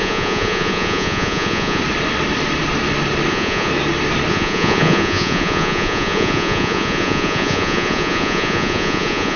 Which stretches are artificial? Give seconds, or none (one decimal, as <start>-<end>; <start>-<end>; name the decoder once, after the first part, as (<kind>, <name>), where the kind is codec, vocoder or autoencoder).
0.0-1.8 (vocoder, Vocos); 3.3-3.7; 4.3-9.4